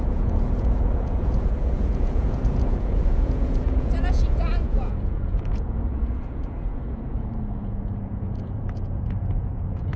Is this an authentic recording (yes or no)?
no